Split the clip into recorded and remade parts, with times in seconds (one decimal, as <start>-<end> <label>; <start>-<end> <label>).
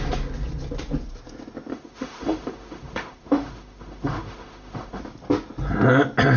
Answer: 0.0-1.7 recorded; 1.7-5.0 remade; 5.0-6.4 recorded